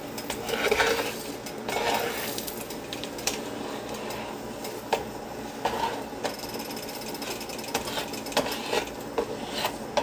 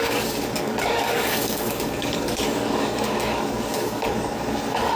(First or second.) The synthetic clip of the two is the second